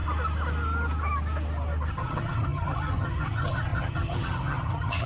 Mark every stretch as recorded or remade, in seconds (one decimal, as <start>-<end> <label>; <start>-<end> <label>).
0.0-1.9 recorded; 1.9-5.1 remade